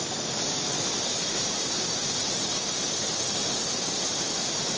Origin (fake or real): real